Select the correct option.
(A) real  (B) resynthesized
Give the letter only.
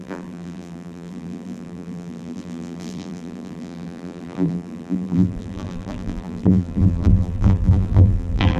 B